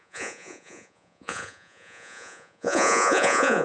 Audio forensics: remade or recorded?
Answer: remade